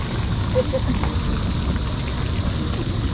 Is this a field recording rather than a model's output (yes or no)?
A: yes